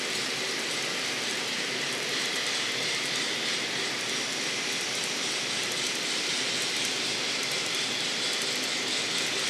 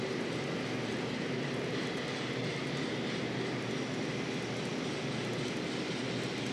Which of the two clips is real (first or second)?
second